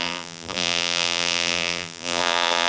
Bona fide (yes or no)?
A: no